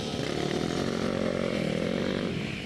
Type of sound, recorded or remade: remade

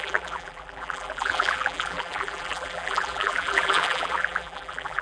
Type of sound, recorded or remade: remade